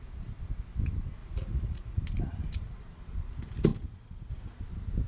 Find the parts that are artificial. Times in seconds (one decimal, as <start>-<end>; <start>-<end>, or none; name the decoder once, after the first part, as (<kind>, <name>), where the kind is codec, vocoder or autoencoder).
1.2-2.0 (vocoder, Vocos)